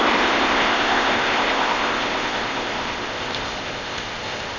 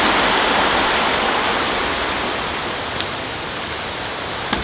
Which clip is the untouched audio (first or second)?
second